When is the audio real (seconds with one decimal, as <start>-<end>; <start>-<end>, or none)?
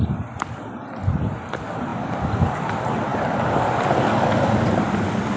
0.0-5.4